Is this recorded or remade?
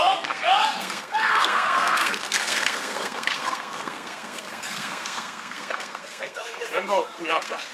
remade